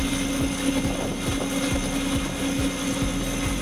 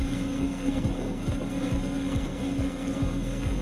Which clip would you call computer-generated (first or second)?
second